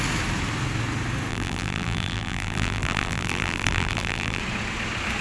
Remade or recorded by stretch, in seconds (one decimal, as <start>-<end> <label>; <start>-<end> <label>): 0.0-1.3 recorded; 1.3-4.4 remade; 4.4-5.2 recorded